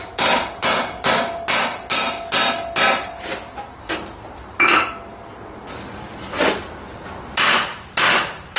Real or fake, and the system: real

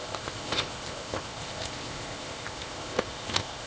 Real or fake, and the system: fake, codec, ZipCodec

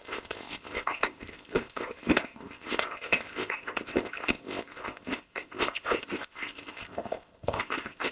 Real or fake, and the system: fake, codec, ZipCodec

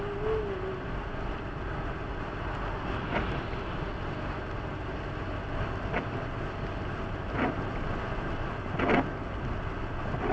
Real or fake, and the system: real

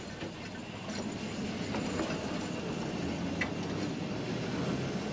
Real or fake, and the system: real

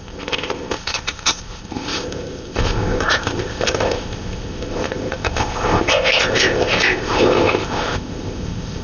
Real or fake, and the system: fake, codec, ZipCodec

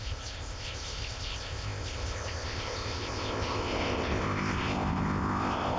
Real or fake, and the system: fake, codec, ZipCodec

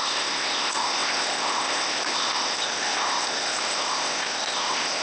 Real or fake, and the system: fake, codec, ZipCodec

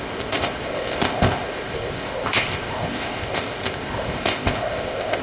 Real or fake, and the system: fake, codec, ZipCodec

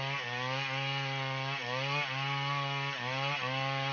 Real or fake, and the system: real